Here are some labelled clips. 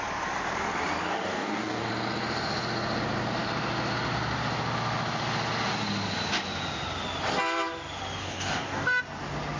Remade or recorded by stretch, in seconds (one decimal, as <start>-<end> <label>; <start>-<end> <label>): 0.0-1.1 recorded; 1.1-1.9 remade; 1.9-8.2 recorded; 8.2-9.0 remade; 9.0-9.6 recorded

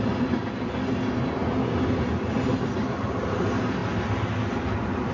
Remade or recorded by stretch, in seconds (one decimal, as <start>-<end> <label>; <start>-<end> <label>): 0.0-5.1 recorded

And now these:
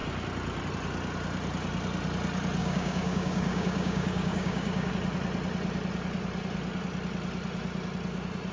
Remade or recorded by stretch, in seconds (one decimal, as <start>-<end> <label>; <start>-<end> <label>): 0.0-2.6 recorded; 2.6-4.9 remade; 4.9-8.5 recorded

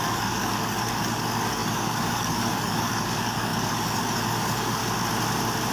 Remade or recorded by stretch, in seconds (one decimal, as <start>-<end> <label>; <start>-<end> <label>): 0.0-4.8 remade; 4.8-5.7 recorded

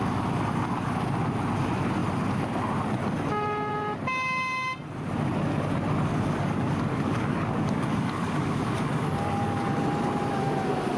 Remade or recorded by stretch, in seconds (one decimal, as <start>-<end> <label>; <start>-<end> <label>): 0.0-6.1 recorded; 6.1-9.7 remade; 9.7-11.0 recorded

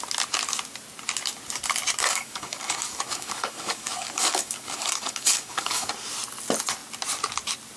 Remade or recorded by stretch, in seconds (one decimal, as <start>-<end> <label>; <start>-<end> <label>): 0.0-2.0 recorded; 2.0-5.9 remade; 5.9-7.8 recorded

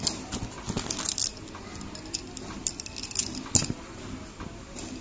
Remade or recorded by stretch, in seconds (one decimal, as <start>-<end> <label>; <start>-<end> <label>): 0.0-5.0 recorded

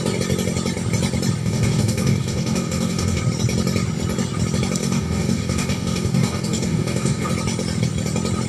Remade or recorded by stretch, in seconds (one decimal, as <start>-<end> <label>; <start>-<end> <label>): 0.0-1.4 recorded; 1.4-3.2 remade; 3.2-4.8 recorded; 4.8-7.3 remade; 7.3-8.5 recorded